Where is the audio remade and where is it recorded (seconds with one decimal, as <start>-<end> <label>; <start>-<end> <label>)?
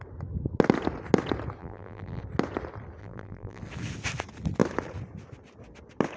0.0-1.6 recorded; 1.6-2.2 remade; 2.2-3.0 recorded; 3.0-3.6 remade; 3.6-6.2 recorded